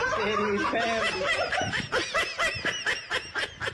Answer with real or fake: real